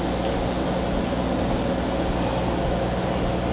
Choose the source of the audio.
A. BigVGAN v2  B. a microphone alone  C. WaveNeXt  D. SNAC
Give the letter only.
B